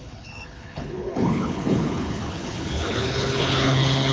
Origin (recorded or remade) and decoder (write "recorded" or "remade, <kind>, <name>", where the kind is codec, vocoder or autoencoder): remade, codec, HILCodec